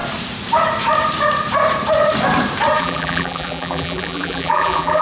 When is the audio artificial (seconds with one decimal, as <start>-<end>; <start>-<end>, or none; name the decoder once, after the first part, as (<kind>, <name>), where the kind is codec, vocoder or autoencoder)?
2.8-5.0 (vocoder, BigVGAN v2)